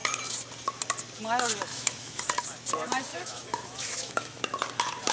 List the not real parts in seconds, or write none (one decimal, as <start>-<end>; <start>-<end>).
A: 1.7-2.2; 3.1-4.4